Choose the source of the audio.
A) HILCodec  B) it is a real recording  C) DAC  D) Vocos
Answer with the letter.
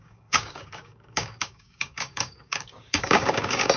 C